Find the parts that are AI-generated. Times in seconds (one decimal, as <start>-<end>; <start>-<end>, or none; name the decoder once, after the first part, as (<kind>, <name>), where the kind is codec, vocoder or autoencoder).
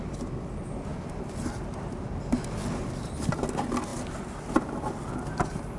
none